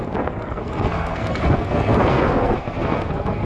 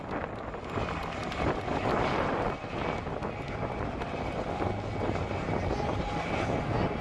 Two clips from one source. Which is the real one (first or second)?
second